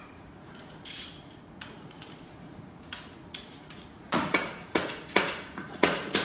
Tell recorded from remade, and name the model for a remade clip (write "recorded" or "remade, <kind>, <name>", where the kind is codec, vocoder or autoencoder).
remade, vocoder, Vocos